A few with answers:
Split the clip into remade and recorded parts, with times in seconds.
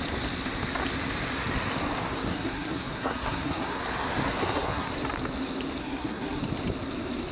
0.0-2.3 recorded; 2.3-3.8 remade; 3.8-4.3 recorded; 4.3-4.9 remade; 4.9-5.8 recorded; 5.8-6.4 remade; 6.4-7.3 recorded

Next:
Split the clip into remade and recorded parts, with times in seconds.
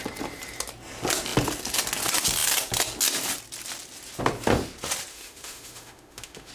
0.0-5.1 recorded; 5.1-6.5 remade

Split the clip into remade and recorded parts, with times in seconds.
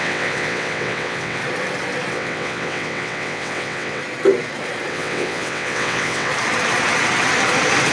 0.0-1.4 remade; 1.4-2.1 recorded; 2.1-4.0 remade; 4.0-4.9 recorded; 4.9-6.3 remade; 6.3-7.9 recorded